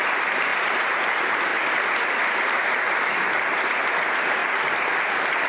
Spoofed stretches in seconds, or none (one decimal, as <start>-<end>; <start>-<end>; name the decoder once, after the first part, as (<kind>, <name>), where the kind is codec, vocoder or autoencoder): 0.0-1.5 (vocoder, BigVGAN v2); 2.3-4.4; 5.1-5.5